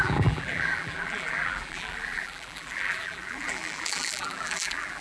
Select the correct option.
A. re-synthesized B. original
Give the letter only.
A